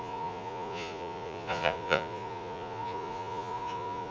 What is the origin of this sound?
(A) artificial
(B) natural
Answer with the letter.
A